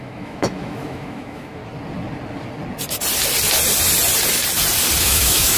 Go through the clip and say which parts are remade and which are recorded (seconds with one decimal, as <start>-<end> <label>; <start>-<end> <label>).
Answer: 0.0-1.6 remade; 1.6-5.0 recorded; 5.0-5.6 remade